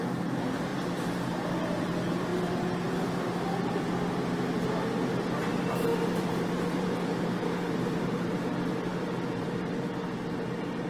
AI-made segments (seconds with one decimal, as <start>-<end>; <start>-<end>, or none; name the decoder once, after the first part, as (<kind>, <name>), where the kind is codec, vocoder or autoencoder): 0.7-1.6 (vocoder, BigVGAN v2); 5.9-8.1; 8.9-10.3